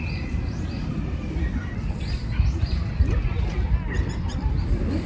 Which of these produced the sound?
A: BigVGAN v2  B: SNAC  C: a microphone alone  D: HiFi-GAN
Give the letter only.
C